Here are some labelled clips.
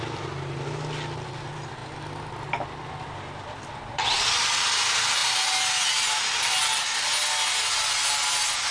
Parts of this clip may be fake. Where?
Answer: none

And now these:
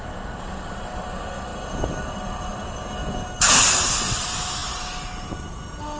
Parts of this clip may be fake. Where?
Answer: none

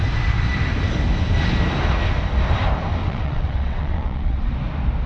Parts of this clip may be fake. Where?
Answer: 3.0-4.5 (vocoder, WaveNeXt)